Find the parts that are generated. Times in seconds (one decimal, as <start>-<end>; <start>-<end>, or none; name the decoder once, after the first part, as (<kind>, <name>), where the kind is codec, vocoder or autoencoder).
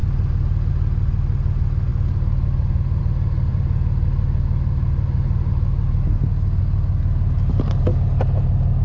none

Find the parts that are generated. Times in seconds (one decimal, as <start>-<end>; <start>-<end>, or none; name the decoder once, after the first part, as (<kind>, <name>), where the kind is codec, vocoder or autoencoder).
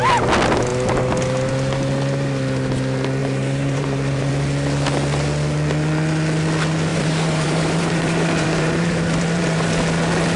3.2-4.3 (vocoder, BigVGAN v2); 6.9-9.7